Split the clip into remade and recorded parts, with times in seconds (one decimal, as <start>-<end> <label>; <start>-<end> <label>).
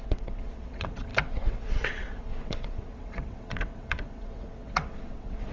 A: 0.0-5.5 remade